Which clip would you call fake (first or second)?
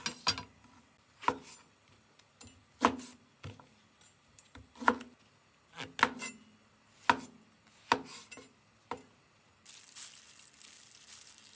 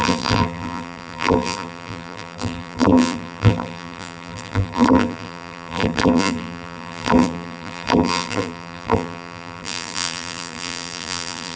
second